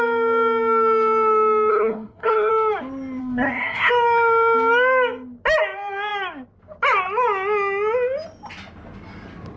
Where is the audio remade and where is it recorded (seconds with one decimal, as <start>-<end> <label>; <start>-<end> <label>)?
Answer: 0.0-1.7 recorded; 1.7-2.5 remade; 2.5-3.2 recorded; 3.2-3.9 remade; 3.9-9.6 recorded

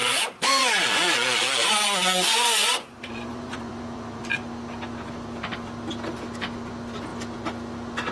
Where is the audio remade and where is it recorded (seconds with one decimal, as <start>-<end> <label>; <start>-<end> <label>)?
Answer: 0.0-3.8 remade; 3.8-8.1 recorded

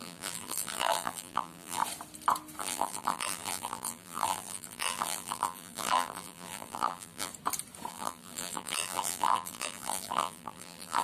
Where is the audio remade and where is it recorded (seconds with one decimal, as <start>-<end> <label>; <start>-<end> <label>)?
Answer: 0.0-1.8 remade; 1.8-2.6 recorded; 2.6-7.3 remade; 7.3-7.9 recorded; 7.9-11.0 remade

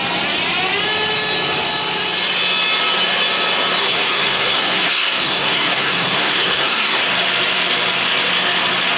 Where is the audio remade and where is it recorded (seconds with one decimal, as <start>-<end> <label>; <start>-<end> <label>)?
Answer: 0.0-3.8 recorded; 3.8-7.0 remade; 7.0-9.0 recorded

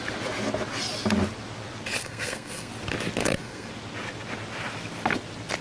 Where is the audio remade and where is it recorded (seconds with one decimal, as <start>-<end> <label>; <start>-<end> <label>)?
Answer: 0.0-2.0 recorded; 2.0-2.7 remade; 2.7-3.2 recorded; 3.2-3.7 remade; 3.7-5.6 recorded

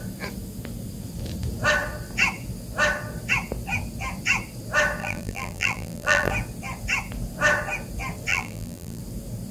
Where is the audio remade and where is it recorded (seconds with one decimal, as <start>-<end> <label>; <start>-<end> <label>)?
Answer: 0.0-5.0 recorded; 5.0-6.3 remade; 6.3-8.3 recorded; 8.3-9.0 remade; 9.0-9.5 recorded

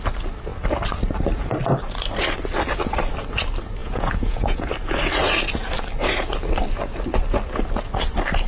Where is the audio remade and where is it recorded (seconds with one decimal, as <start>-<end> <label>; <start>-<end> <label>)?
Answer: 0.0-3.8 recorded; 3.8-4.7 remade; 4.7-8.5 recorded

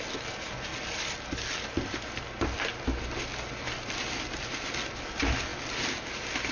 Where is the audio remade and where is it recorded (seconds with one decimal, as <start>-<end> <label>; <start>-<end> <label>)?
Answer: 0.0-6.5 recorded